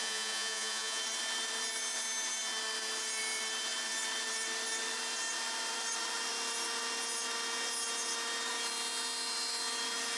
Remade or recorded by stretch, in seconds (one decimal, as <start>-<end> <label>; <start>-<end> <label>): 0.0-1.0 remade; 1.0-10.2 recorded